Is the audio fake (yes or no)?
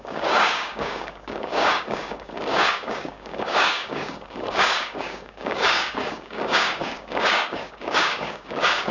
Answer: yes